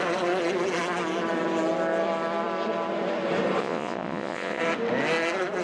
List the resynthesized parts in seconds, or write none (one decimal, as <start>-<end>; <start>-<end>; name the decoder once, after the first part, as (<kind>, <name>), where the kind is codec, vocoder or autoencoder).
3.6-4.6 (vocoder, Vocos)